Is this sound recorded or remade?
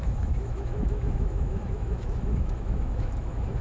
remade